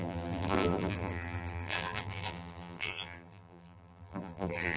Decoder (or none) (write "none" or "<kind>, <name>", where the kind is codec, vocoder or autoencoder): vocoder, BigVGAN v2